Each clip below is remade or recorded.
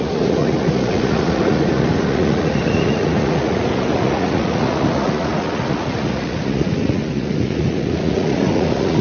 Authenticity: remade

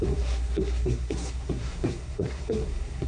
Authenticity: remade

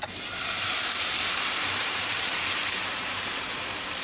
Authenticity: remade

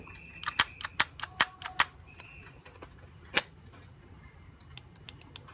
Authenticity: recorded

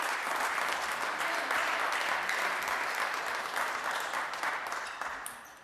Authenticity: remade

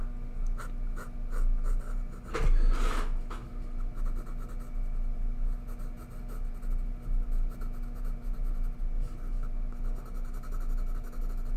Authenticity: recorded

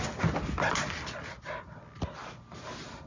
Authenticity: recorded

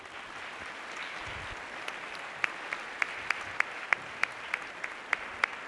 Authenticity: recorded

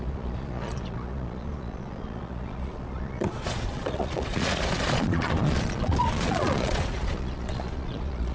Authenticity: remade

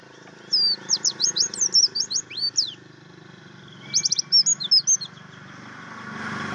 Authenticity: recorded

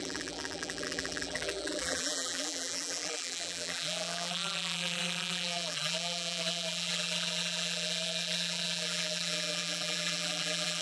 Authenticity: remade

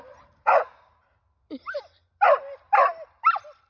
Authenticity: recorded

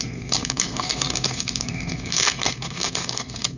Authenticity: remade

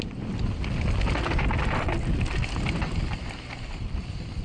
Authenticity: recorded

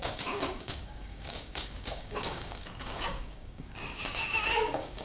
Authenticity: remade